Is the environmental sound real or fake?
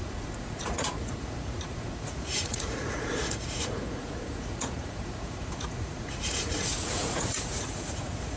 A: fake